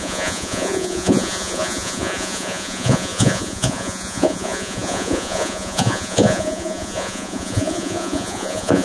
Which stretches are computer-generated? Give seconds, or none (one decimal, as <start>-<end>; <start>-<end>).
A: 0.0-8.8